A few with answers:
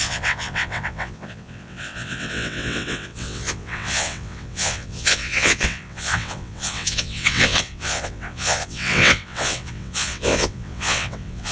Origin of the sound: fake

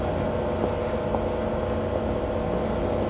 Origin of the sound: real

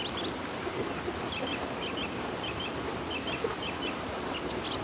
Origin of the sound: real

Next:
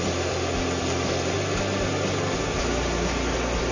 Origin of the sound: real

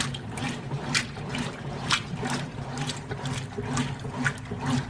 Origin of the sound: real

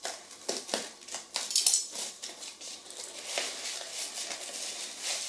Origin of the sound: real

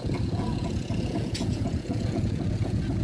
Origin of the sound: fake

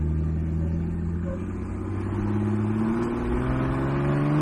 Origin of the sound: real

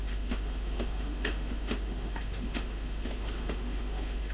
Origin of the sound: fake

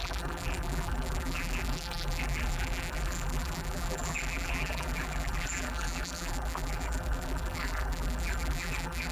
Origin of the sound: fake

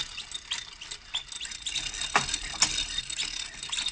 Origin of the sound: real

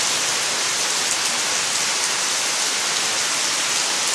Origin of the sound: real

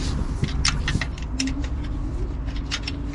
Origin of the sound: real